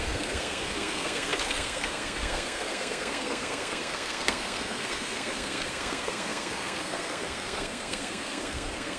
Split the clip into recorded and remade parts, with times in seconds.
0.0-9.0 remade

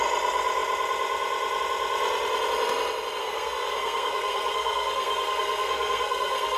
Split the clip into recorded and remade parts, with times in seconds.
0.0-3.2 recorded; 3.2-6.6 remade